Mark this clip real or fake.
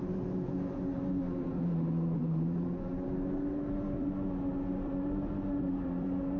fake